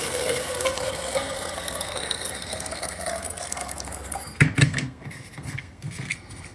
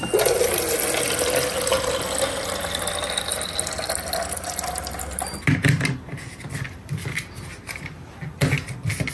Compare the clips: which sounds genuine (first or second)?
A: second